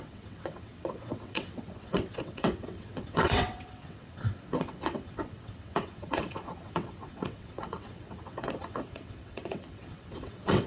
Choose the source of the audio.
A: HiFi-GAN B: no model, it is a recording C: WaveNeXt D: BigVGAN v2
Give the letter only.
C